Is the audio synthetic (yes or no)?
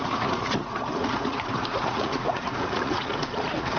yes